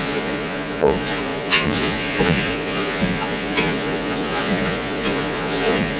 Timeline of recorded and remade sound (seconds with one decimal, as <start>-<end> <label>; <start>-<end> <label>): 0.0-6.0 remade